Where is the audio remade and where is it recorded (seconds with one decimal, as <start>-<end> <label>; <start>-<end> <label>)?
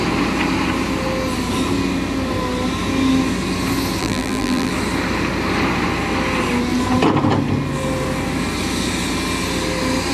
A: 0.0-4.0 recorded; 4.0-4.7 remade; 4.7-10.1 recorded